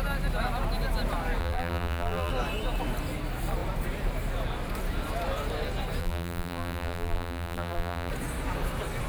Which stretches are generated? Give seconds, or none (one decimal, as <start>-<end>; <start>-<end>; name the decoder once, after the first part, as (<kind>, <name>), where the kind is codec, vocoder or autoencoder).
1.4-2.3 (vocoder, BigVGAN v2); 6.0-8.1